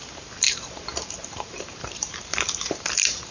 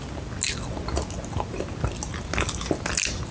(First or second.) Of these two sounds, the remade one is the first